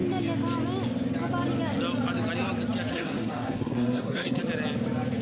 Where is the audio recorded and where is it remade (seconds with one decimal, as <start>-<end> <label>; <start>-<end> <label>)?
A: 0.0-2.9 recorded; 2.9-4.4 remade; 4.4-5.2 recorded